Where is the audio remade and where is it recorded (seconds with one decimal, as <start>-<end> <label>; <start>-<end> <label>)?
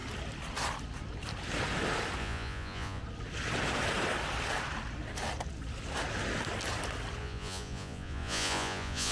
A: 0.0-2.2 recorded; 2.2-3.0 remade; 3.0-7.2 recorded; 7.2-9.1 remade